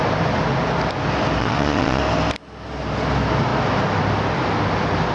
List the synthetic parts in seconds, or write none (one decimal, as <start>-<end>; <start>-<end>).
1.4-2.0